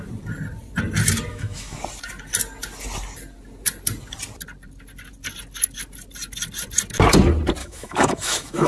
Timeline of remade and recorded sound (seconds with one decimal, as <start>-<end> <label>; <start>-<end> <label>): 0.0-1.3 recorded; 1.3-1.8 remade; 1.8-7.6 recorded; 7.6-8.7 remade